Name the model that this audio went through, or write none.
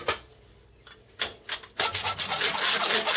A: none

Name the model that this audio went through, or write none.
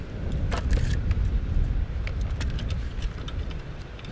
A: none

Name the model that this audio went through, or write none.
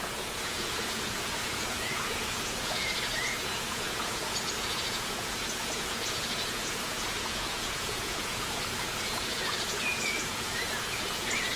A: vocoder, Vocos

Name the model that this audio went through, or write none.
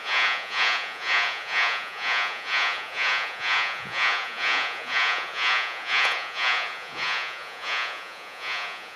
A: vocoder, Vocos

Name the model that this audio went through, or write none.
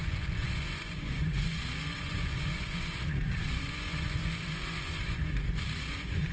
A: vocoder, Vocos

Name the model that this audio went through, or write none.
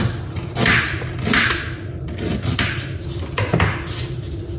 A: none